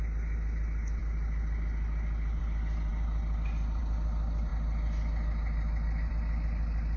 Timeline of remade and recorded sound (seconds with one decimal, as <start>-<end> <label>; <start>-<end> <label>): 0.0-7.0 recorded